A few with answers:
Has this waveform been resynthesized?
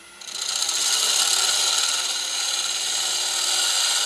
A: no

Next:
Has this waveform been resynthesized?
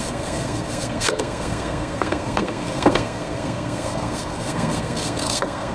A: yes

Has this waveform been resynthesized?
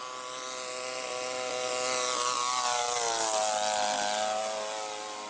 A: no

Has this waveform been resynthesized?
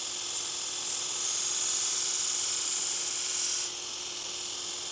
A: no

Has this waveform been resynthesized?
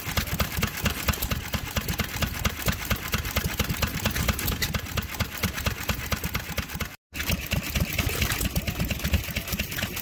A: no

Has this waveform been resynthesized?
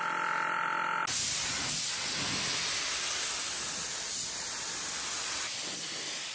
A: no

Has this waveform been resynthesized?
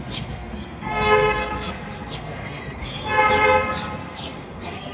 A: yes